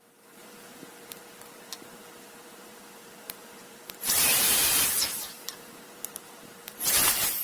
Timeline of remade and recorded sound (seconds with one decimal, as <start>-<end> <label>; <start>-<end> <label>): 0.0-7.4 remade